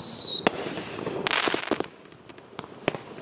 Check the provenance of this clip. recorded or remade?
recorded